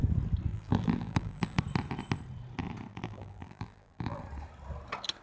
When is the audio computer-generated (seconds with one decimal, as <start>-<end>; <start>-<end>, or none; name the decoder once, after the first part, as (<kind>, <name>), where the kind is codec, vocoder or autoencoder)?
0.5-1.6 (vocoder, BigVGAN v2); 2.9-4.2